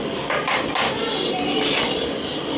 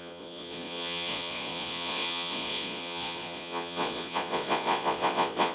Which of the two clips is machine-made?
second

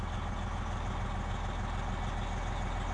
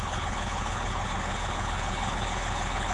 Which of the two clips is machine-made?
second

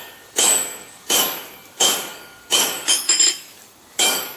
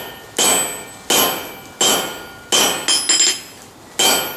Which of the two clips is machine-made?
first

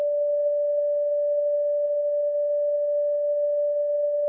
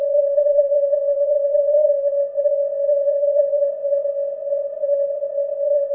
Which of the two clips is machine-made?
second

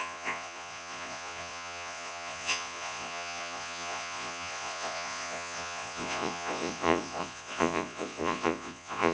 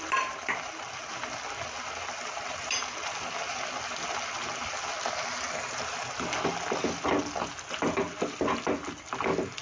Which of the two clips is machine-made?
first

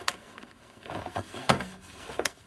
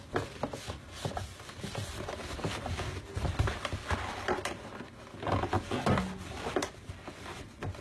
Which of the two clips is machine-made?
first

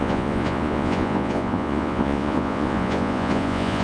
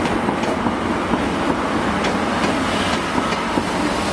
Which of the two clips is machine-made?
first